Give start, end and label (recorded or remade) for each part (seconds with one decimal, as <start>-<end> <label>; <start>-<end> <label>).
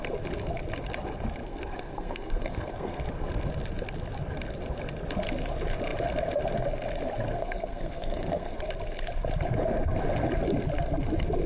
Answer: 0.0-1.4 recorded; 1.4-3.0 remade; 3.0-7.3 recorded; 7.3-8.6 remade; 8.6-11.5 recorded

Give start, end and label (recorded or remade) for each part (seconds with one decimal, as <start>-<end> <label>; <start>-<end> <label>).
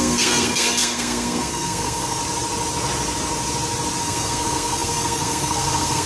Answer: 0.0-2.2 remade; 2.2-4.0 recorded; 4.0-6.1 remade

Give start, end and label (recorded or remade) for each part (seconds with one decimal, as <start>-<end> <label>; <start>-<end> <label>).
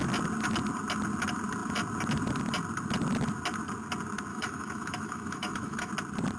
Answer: 0.0-4.3 recorded; 4.3-5.9 remade; 5.9-6.4 recorded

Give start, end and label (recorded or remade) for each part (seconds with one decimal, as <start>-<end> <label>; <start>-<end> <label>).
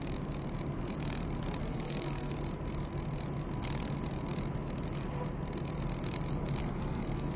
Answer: 0.0-1.6 recorded; 1.6-2.3 remade; 2.3-6.6 recorded; 6.6-7.4 remade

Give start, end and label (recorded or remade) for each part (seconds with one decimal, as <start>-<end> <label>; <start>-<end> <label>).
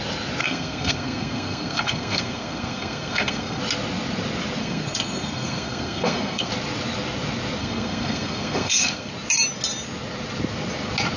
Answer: 0.0-0.4 recorded; 0.4-3.6 remade; 3.6-4.6 recorded; 4.6-6.5 remade; 6.5-7.6 recorded; 7.6-9.1 remade; 9.1-11.2 recorded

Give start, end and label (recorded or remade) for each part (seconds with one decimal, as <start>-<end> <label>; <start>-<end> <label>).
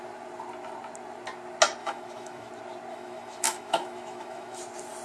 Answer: 0.0-1.8 recorded; 1.8-2.5 remade; 2.5-2.9 recorded; 2.9-4.6 remade; 4.6-5.0 recorded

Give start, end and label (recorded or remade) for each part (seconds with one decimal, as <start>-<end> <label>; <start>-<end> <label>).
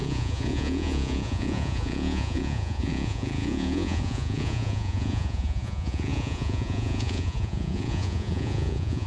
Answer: 0.0-9.1 remade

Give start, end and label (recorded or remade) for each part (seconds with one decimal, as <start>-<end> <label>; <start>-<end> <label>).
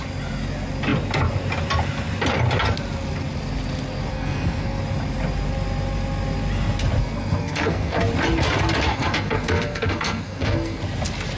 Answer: 0.0-4.1 recorded; 4.1-4.8 remade; 4.8-7.0 recorded; 7.0-8.0 remade; 8.0-8.9 recorded; 8.9-10.8 remade; 10.8-11.4 recorded